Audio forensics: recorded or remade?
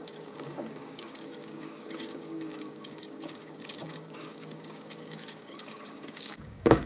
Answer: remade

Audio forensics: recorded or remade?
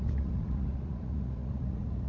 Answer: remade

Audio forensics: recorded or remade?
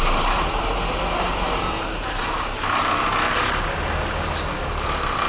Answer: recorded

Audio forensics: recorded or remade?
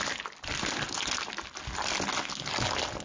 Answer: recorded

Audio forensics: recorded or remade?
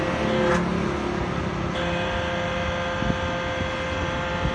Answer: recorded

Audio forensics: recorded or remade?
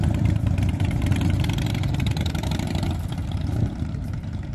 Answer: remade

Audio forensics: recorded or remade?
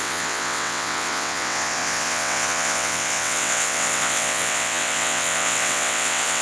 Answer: remade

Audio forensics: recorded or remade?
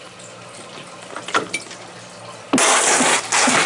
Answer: recorded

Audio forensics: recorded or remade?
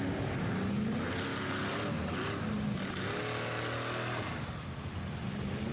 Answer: recorded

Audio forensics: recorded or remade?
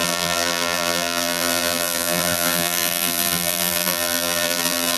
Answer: remade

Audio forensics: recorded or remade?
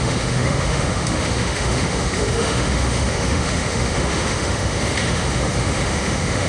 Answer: remade